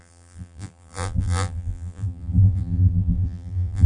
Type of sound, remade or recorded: remade